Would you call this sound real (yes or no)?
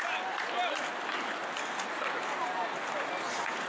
yes